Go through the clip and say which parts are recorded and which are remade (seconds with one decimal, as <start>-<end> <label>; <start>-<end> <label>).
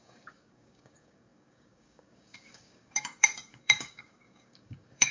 0.0-5.1 remade